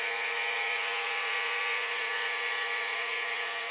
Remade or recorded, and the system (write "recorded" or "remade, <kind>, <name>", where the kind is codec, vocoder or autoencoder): remade, vocoder, Vocos